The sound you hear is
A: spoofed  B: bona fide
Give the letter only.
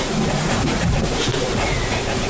A